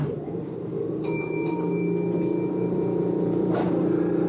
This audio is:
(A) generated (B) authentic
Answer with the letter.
A